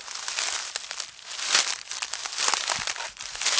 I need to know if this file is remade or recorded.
recorded